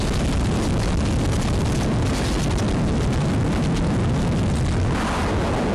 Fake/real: real